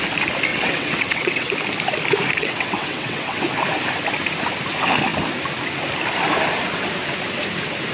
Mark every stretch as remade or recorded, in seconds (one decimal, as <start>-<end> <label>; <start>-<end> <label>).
0.0-0.5 recorded; 0.5-1.5 remade; 1.5-2.4 recorded; 2.4-3.4 remade; 3.4-7.9 recorded